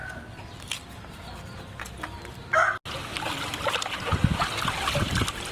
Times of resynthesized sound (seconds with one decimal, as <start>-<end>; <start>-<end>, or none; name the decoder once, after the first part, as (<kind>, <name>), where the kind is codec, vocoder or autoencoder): none